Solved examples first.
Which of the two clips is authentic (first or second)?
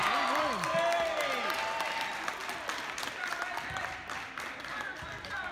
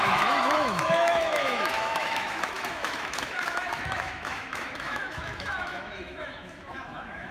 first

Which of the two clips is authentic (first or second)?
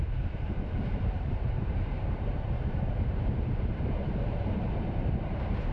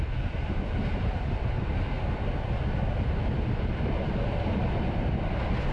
second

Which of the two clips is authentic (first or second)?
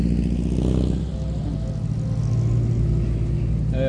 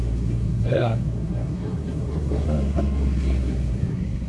first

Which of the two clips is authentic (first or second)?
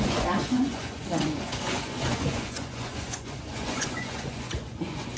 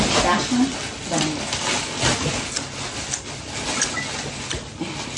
second